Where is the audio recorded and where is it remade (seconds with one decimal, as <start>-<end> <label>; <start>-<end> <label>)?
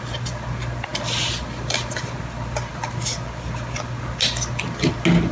0.0-5.3 recorded